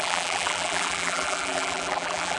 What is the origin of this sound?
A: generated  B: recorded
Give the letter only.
A